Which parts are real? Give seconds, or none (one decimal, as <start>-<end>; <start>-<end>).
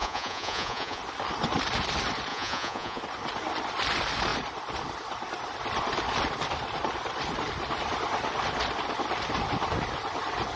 1.0-2.3; 3.0-10.6